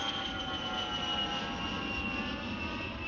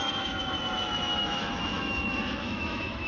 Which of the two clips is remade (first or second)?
second